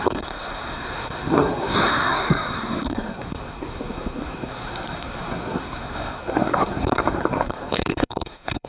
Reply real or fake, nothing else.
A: fake